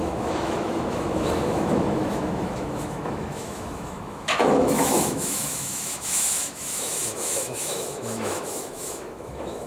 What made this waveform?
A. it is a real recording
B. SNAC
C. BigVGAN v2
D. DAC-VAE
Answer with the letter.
D